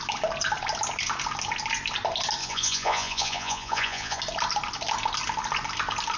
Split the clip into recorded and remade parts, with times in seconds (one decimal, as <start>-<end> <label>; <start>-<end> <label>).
0.0-2.4 recorded; 2.4-4.2 remade; 4.2-6.2 recorded